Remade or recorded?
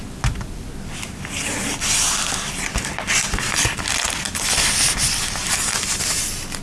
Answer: recorded